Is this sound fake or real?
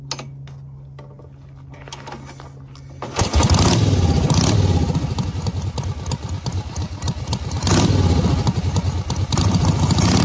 real